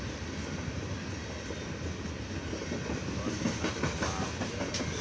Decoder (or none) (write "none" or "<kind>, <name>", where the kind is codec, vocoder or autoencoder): none